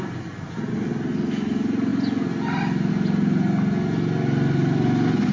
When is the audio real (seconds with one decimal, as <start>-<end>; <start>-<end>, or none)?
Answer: 0.0-5.3